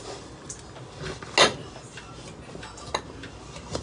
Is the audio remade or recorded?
recorded